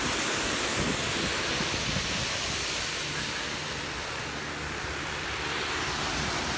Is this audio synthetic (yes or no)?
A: no